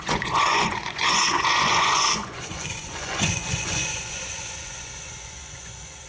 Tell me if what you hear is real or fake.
fake